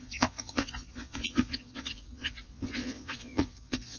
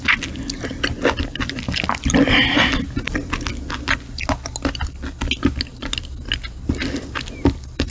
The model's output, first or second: first